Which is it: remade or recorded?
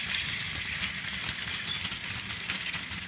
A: recorded